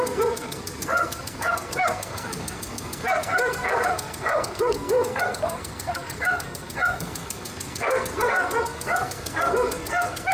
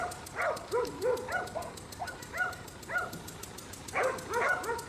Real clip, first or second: second